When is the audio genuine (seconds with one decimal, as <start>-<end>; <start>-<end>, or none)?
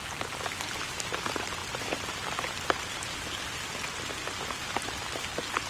0.0-5.7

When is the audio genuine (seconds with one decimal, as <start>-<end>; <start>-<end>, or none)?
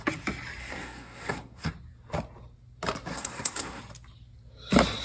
0.0-0.6; 1.7-3.1; 3.8-5.0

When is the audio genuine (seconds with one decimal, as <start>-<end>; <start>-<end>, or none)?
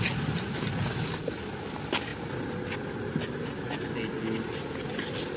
0.0-5.4